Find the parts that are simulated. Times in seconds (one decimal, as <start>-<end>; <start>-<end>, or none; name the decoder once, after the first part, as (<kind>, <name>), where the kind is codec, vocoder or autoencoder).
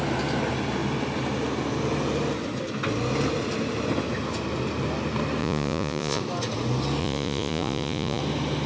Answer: 5.4-6.2 (vocoder, Vocos); 7.0-8.2